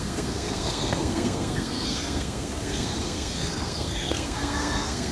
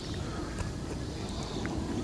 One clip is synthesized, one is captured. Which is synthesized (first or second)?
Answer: first